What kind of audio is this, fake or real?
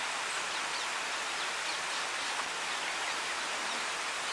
real